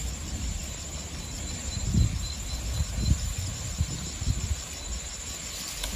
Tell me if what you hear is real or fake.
real